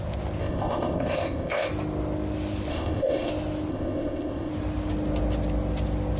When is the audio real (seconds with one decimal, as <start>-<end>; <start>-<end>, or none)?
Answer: 0.0-0.4; 1.7-2.7; 3.3-3.7; 4.5-6.2